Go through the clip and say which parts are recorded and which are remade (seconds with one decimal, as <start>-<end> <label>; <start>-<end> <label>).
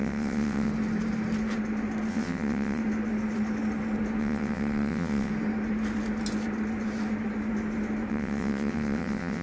0.0-0.7 remade; 0.7-2.1 recorded; 2.1-2.8 remade; 2.8-4.2 recorded; 4.2-5.3 remade; 5.3-8.1 recorded; 8.1-9.4 remade